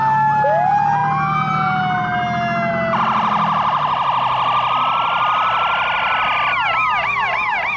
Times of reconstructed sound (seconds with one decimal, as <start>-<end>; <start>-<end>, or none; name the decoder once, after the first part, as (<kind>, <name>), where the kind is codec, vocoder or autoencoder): none